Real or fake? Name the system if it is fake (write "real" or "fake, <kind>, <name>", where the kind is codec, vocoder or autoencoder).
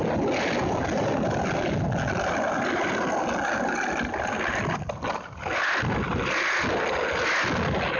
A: real